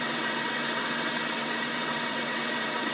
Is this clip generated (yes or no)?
yes